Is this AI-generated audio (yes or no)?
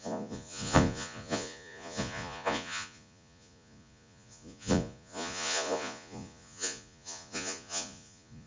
yes